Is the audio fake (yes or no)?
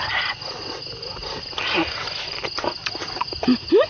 no